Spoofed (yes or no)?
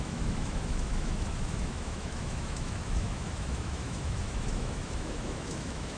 yes